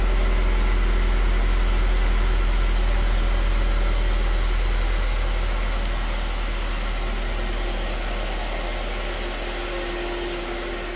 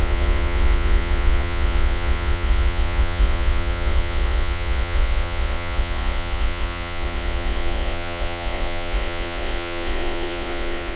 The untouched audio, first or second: first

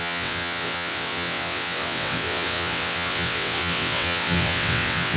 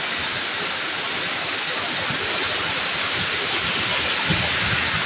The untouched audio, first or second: second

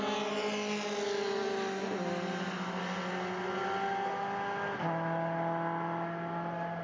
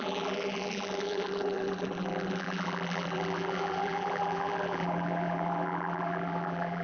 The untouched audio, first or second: first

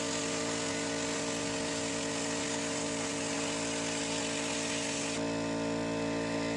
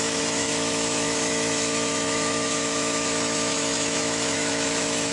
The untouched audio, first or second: first